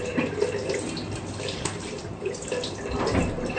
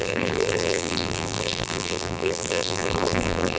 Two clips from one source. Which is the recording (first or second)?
first